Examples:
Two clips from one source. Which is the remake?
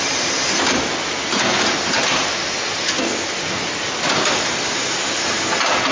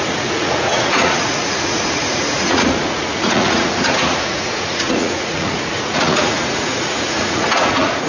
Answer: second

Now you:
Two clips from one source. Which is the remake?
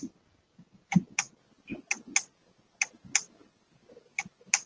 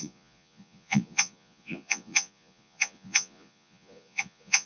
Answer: second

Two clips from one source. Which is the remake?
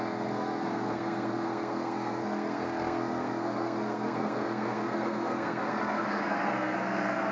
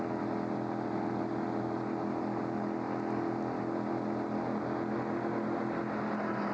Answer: first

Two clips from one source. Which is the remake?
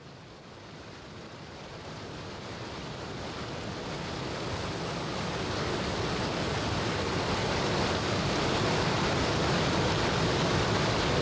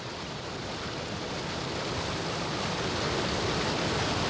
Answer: second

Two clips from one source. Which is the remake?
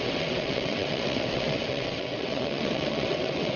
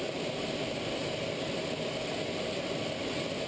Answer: first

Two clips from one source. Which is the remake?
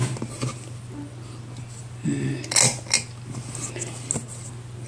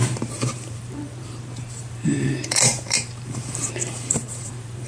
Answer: second